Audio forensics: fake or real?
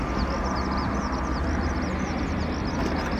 real